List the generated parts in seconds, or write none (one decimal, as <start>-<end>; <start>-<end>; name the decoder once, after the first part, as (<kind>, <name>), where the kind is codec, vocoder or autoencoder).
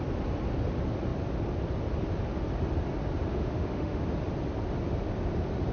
3.3-4.0 (autoencoder, DAC-VAE)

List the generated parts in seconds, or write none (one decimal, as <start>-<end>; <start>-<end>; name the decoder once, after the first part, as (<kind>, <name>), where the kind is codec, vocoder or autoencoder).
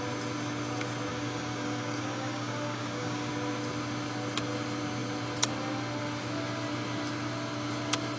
1.1-3.3 (codec, DAC)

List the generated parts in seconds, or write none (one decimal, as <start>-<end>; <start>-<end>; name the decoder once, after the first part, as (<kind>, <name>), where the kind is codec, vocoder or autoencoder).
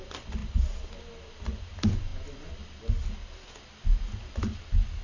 none